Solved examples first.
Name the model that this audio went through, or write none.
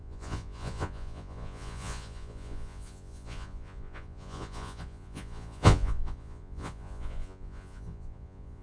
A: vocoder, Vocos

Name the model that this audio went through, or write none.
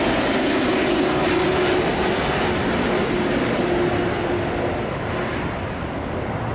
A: none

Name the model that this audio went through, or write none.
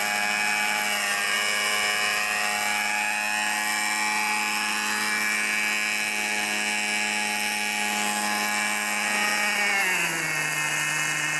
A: none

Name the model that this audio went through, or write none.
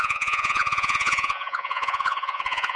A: vocoder, Vocos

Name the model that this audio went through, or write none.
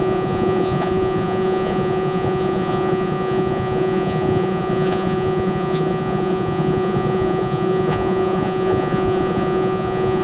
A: vocoder, Vocos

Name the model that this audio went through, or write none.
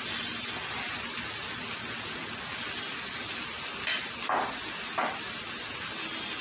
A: none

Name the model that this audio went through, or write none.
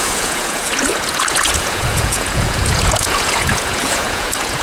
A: vocoder, Vocos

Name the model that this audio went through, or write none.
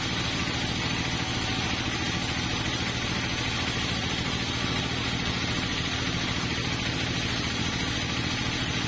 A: none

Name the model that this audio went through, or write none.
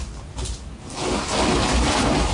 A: none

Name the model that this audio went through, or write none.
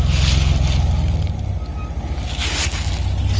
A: none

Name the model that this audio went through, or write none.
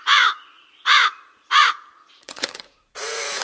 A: vocoder, Vocos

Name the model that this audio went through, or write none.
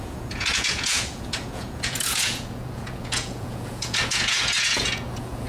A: vocoder, Vocos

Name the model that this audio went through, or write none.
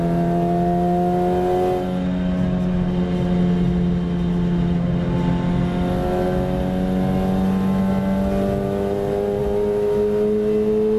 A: none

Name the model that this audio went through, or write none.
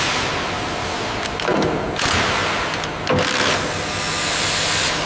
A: none